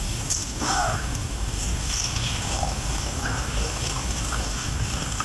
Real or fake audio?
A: fake